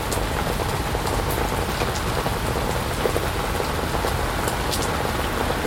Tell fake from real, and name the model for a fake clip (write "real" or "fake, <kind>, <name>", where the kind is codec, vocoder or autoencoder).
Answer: real